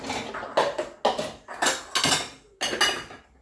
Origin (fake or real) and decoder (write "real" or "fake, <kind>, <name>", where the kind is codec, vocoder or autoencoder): real